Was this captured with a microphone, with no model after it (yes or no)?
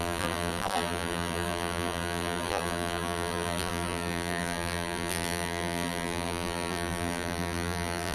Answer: no